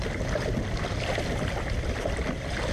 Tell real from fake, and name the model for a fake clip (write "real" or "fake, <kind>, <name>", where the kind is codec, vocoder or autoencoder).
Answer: real